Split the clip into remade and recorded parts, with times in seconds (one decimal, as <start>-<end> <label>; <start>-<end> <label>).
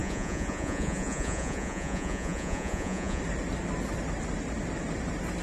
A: 0.0-3.2 remade; 3.2-5.4 recorded